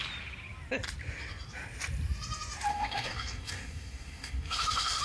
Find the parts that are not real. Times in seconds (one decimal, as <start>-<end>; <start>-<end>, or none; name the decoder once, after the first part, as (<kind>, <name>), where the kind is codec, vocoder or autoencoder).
2.7-5.0 (codec, DAC)